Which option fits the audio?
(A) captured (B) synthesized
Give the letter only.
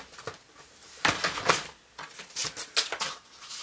A